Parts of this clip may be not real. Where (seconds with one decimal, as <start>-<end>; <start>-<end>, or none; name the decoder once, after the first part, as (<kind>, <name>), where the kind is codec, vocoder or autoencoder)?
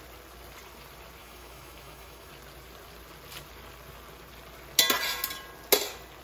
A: 1.2-2.3 (autoencoder, DAC-VAE)